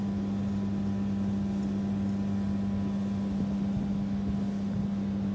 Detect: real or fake real